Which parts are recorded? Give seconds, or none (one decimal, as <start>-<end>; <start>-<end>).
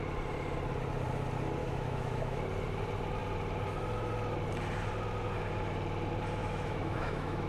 0.0-1.6; 2.4-6.4